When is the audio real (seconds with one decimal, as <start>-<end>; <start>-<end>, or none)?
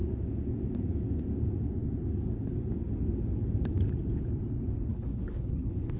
0.0-4.9